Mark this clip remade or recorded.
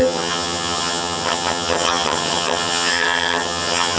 remade